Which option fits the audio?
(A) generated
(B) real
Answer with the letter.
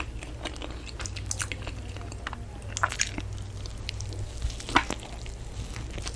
B